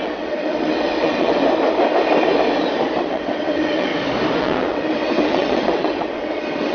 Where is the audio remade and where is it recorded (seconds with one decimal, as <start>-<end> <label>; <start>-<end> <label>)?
0.0-1.4 remade; 1.4-3.0 recorded; 3.0-3.9 remade; 3.9-4.4 recorded; 4.4-6.7 remade